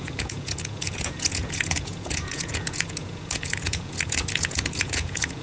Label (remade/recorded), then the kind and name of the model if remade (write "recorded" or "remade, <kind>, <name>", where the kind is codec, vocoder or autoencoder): remade, vocoder, Vocos